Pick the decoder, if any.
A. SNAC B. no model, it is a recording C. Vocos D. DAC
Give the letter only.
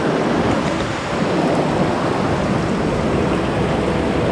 B